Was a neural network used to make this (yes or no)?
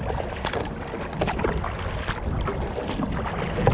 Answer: no